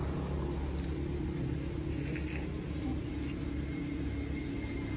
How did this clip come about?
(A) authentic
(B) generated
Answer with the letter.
A